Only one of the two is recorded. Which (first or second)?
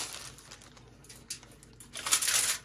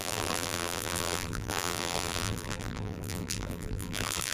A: first